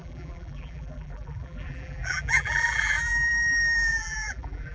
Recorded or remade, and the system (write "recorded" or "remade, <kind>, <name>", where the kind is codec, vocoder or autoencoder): remade, vocoder, BigVGAN v2